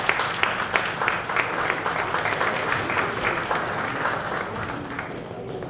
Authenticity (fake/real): real